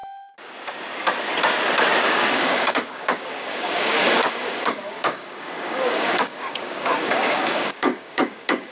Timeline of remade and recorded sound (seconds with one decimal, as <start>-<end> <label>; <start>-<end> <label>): 0.0-2.0 recorded; 2.0-8.7 remade